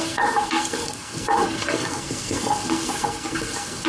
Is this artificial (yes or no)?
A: yes